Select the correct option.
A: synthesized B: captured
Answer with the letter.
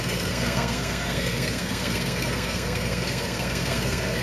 A